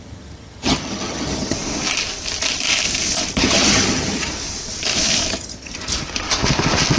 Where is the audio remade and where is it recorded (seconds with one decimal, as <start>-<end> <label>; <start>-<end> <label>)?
0.0-1.6 remade; 1.6-3.4 recorded; 3.4-4.3 remade; 4.3-5.3 recorded; 5.3-5.9 remade; 5.9-7.0 recorded